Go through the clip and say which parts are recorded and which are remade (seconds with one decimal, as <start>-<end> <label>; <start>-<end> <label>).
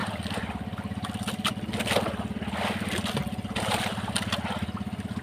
0.0-5.2 recorded